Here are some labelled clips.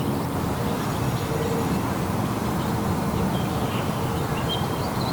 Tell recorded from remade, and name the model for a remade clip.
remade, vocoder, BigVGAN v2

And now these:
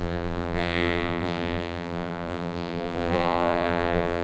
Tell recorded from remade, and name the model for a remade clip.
remade, vocoder, BigVGAN v2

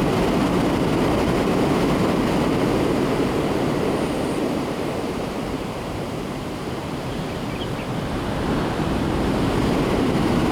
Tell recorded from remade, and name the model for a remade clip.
remade, vocoder, BigVGAN v2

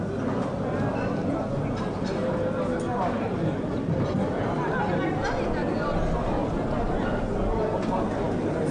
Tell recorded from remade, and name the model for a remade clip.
recorded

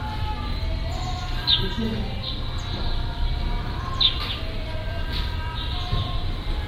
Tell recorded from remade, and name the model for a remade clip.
recorded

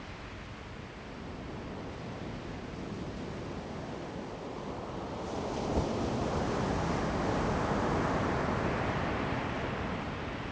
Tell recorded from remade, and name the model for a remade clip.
recorded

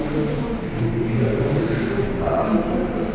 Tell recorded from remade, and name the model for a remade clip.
remade, vocoder, BigVGAN v2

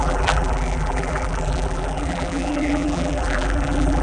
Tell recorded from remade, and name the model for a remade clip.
remade, vocoder, BigVGAN v2